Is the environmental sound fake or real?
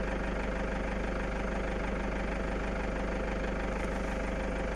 real